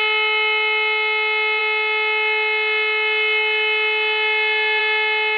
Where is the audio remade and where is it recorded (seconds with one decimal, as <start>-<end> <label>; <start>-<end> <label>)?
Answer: 0.0-5.4 recorded